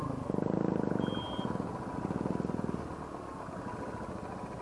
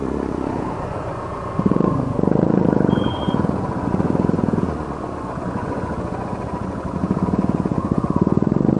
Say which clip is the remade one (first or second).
second